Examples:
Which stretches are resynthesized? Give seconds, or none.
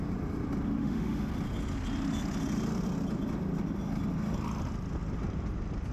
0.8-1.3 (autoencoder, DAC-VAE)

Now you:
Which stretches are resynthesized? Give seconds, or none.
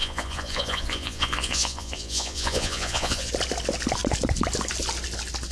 0.0-3.3 (vocoder, Vocos)